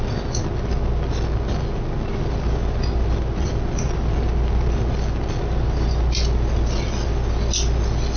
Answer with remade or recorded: recorded